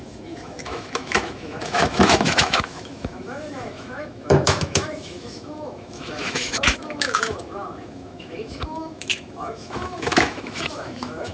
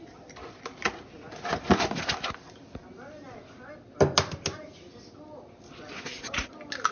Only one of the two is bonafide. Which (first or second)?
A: second